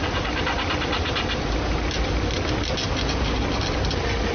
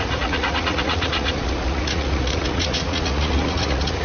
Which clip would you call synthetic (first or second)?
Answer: second